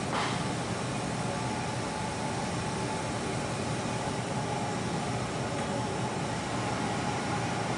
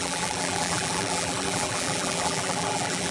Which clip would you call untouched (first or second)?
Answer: first